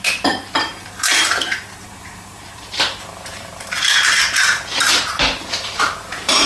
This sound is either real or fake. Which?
fake